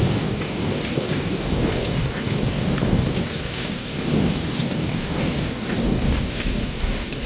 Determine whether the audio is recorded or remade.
remade